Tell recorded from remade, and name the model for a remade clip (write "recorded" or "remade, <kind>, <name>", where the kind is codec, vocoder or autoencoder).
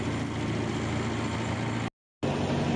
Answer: recorded